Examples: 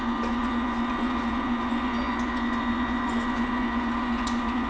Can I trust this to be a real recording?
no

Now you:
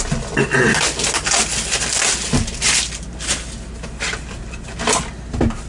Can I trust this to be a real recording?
yes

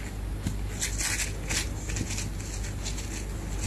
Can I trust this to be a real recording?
yes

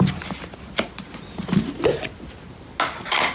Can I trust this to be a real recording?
yes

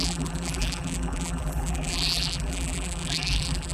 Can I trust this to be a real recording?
no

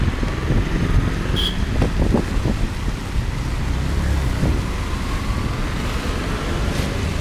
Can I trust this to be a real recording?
yes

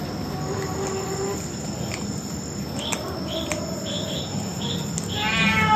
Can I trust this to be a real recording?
yes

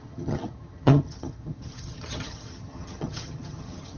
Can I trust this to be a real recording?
no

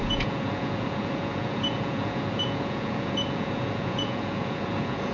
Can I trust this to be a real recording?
no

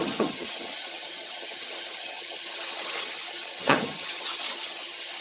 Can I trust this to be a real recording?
no